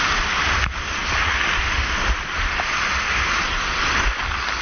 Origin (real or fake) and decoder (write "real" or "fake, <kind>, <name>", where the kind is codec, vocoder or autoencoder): real